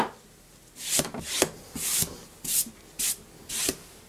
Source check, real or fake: real